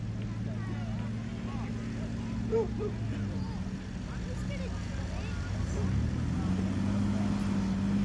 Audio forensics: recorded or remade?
recorded